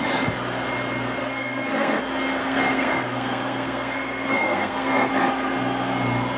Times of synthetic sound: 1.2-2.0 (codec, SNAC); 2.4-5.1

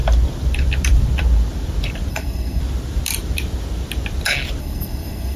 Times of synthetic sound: 2.1-2.6 (codec, SNAC); 4.6-5.4

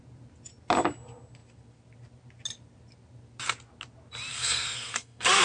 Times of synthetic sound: 4.3-5.4 (codec, SNAC)

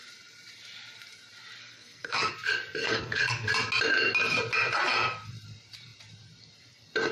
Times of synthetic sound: 1.6-2.3 (codec, SNAC); 2.8-3.5